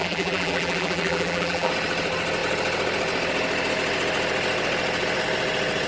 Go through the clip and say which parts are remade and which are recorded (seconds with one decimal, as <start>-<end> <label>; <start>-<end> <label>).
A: 0.0-1.7 remade; 1.7-5.9 recorded